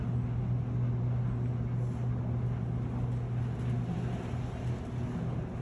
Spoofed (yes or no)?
no